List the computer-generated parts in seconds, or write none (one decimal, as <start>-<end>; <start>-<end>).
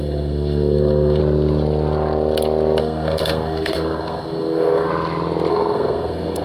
0.0-1.2; 2.8-4.9; 5.5-6.4